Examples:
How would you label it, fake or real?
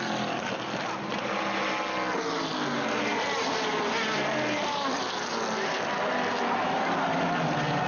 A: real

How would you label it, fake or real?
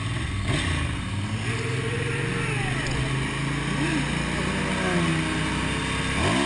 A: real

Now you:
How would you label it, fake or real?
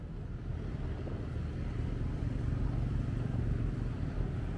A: real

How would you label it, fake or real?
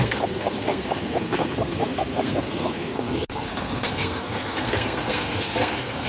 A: fake